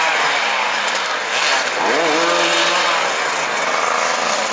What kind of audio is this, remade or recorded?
recorded